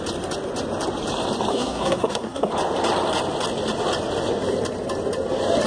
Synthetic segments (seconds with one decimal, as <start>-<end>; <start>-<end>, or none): 1.5-2.5